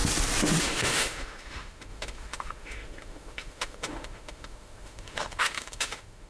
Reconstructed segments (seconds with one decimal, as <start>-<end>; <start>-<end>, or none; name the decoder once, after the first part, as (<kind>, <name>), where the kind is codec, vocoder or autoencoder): 0.6-6.3 (autoencoder, DAC-VAE)